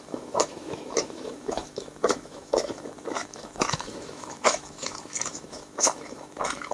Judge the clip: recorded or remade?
remade